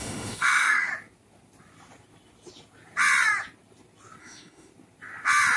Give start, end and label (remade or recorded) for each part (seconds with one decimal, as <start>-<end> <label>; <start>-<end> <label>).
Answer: 0.0-0.9 remade; 0.9-4.2 recorded; 4.2-4.7 remade; 4.7-5.6 recorded